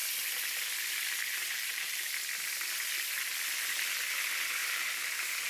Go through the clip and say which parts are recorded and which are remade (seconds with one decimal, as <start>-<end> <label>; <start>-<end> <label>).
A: 0.0-1.4 recorded; 1.4-2.1 remade; 2.1-4.6 recorded; 4.6-5.5 remade